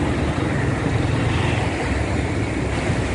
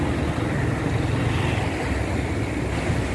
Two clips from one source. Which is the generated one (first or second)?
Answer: first